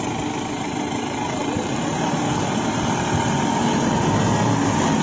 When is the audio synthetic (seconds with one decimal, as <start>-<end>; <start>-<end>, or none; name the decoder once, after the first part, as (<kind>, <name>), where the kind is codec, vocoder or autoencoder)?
none